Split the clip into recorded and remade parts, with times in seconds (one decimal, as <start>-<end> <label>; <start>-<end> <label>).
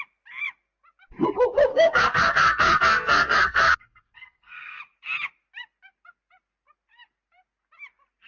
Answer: 0.0-1.7 recorded; 1.7-4.8 remade; 4.8-8.3 recorded